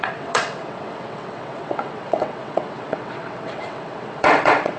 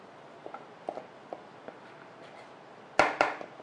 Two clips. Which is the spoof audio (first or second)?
first